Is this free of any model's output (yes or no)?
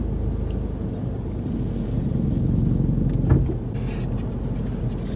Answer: yes